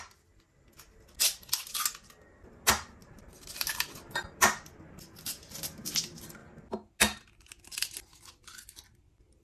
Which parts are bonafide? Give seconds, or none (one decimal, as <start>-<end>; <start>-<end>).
0.0-3.0; 4.2-9.4